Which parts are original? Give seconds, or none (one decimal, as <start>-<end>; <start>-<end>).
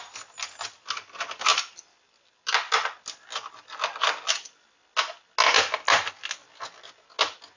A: 0.0-7.6